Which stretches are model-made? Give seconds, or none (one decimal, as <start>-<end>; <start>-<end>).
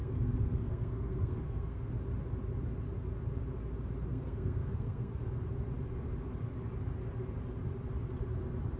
0.0-1.9; 4.1-5.3